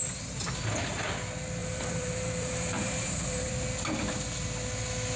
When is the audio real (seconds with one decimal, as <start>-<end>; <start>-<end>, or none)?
0.0-1.6; 3.5-5.2